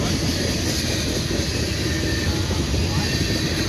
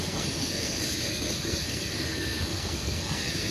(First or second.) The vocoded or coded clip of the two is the second